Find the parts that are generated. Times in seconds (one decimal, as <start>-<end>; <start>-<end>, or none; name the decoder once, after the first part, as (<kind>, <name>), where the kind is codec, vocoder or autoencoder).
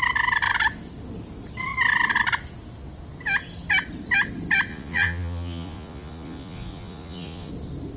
4.7-7.5 (vocoder, Vocos)